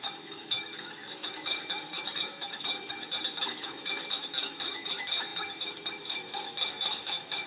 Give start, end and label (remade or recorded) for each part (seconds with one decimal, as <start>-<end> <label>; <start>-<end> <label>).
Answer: 0.0-7.5 remade